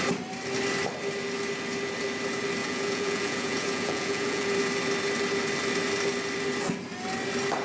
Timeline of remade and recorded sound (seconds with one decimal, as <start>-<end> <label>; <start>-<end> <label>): 0.0-2.6 recorded; 2.6-4.5 remade; 4.5-7.6 recorded